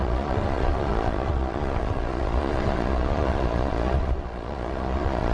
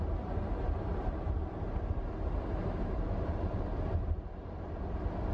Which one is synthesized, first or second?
first